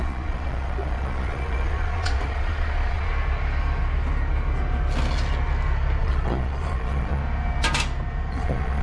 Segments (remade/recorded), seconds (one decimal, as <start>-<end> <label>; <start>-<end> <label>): 0.0-3.1 remade; 3.1-6.0 recorded; 6.0-7.2 remade; 7.2-8.3 recorded; 8.3-8.8 remade